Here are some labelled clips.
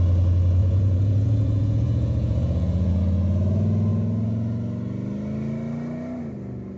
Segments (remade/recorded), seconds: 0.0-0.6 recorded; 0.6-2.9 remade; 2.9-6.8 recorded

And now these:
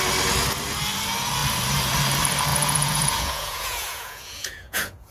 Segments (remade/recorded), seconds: 0.0-2.5 recorded; 2.5-5.1 remade

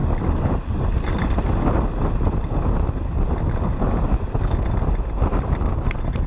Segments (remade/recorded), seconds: 0.0-6.3 recorded

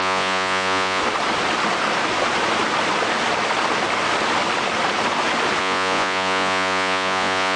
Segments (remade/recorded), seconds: 0.0-1.0 remade; 1.0-5.6 recorded; 5.6-7.6 remade

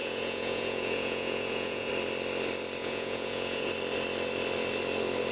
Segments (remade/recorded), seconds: 0.0-1.9 remade; 1.9-2.8 recorded; 2.8-3.7 remade; 3.7-5.3 recorded

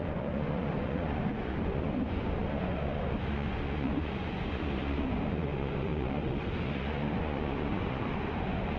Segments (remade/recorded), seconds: 0.0-8.8 remade

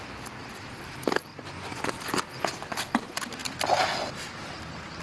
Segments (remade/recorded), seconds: 0.0-1.3 recorded; 1.3-1.9 remade; 1.9-5.0 recorded